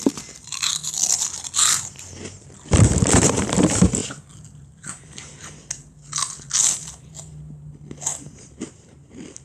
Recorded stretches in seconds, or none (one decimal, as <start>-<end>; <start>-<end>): 0.8-1.7; 4.0-8.7